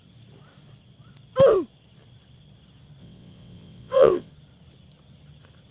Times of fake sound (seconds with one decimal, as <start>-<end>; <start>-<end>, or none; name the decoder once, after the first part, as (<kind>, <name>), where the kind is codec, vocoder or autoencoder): 3.0-4.3 (vocoder, WaveNeXt)